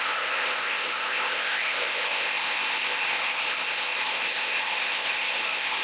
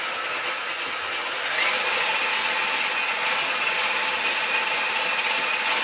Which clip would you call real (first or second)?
second